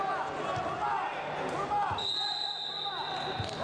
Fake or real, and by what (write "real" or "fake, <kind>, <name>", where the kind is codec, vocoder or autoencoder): real